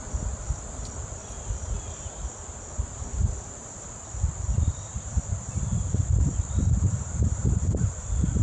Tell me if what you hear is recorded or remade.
recorded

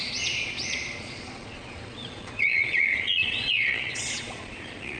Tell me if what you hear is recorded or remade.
remade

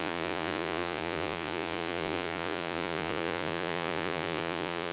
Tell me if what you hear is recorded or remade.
remade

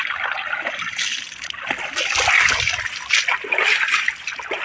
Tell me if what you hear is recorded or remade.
recorded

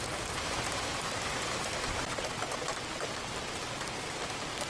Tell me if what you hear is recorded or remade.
recorded